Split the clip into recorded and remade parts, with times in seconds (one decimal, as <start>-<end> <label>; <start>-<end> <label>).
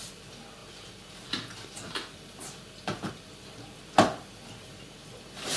0.0-5.6 recorded